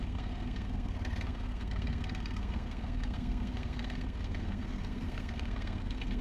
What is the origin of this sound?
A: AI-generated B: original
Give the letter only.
A